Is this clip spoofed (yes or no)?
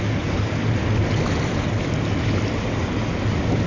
no